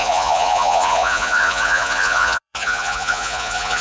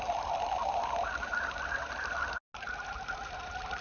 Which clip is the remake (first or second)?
first